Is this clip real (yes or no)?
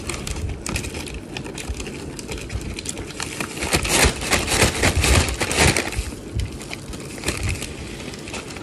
yes